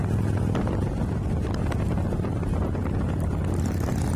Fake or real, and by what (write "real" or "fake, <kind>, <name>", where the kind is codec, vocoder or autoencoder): real